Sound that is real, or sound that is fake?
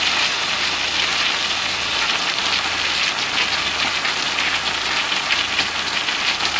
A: real